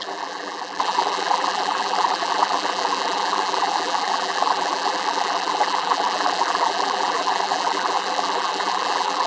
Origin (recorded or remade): remade